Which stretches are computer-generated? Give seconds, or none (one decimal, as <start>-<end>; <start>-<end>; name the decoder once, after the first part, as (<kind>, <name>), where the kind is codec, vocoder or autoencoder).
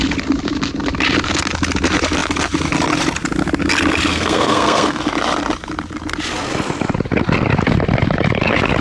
4.1-5.0 (codec, SNAC)